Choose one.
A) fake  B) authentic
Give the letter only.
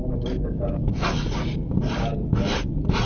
B